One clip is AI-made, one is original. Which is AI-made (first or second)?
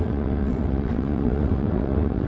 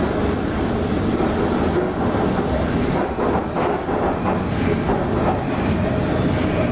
first